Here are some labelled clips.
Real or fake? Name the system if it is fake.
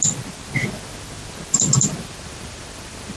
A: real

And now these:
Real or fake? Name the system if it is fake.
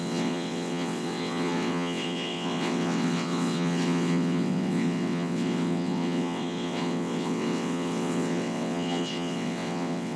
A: fake, vocoder, WaveNeXt